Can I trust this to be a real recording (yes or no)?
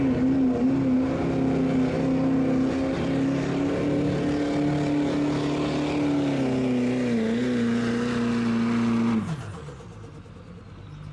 yes